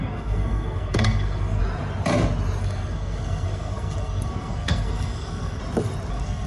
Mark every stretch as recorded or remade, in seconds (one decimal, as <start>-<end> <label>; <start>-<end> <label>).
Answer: 0.0-1.6 remade; 1.6-2.6 recorded; 2.6-5.6 remade; 5.6-6.1 recorded; 6.1-6.5 remade